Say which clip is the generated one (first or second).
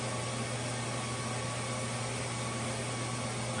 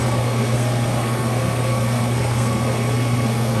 second